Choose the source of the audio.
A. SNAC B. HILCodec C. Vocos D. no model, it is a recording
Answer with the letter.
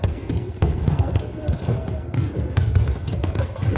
A